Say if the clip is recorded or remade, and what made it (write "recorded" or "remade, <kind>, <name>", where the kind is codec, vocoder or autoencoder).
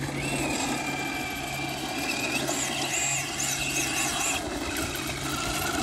recorded